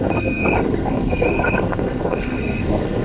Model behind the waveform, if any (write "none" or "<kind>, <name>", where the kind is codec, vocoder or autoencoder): codec, SNAC